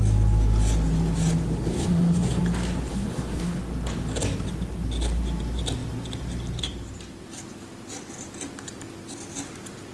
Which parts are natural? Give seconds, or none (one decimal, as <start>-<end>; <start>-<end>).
0.0-1.6; 2.4-2.9; 3.6-9.9